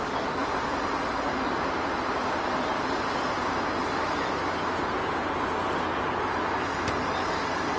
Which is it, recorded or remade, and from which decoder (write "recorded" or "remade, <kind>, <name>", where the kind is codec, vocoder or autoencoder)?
recorded